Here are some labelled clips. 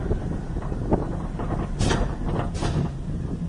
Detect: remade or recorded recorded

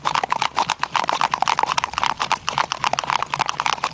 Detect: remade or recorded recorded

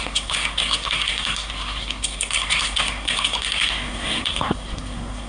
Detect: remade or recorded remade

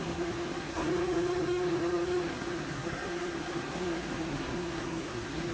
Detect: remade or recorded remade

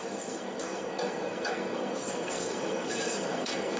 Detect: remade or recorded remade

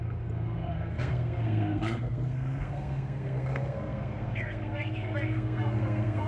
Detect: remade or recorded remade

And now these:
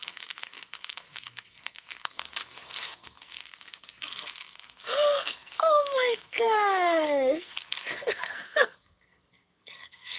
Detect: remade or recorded remade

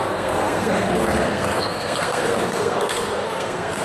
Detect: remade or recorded remade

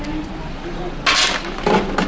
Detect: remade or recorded recorded